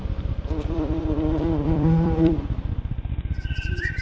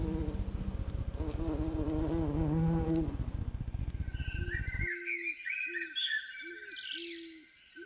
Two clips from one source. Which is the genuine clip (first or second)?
second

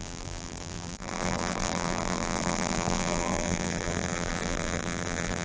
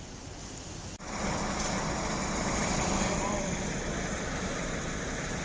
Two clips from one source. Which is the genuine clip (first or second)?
second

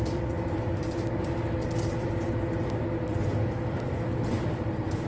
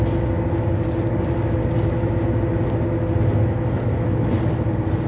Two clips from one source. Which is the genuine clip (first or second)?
second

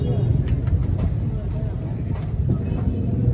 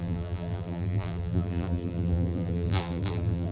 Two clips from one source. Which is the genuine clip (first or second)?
first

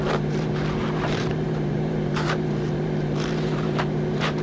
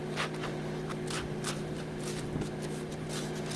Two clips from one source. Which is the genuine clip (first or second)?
second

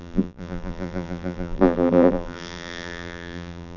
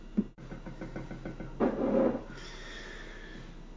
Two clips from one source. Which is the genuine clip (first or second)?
second